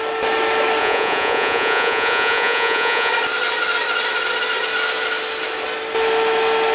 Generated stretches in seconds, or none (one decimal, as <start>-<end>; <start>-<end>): 0.8-3.1